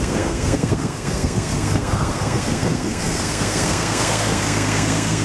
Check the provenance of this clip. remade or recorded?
remade